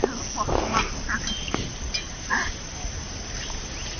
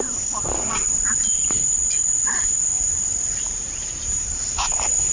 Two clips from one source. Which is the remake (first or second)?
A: second